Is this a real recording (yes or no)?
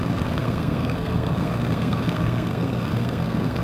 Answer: no